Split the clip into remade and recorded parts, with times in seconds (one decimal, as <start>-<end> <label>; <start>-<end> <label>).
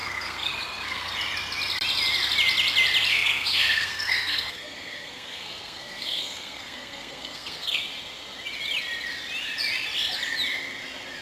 0.0-1.1 remade; 1.1-3.1 recorded; 3.1-7.8 remade; 7.8-11.2 recorded